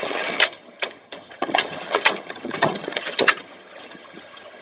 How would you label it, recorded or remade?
remade